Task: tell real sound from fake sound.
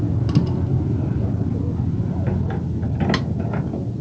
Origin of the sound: real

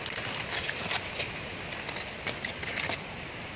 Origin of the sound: real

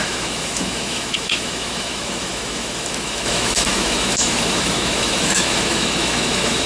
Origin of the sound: fake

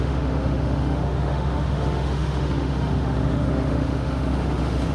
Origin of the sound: fake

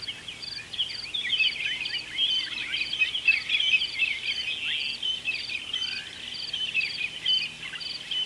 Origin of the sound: real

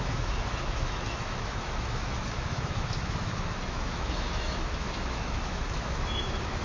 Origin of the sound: fake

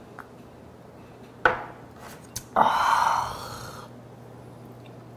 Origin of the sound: real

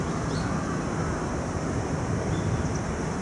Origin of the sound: real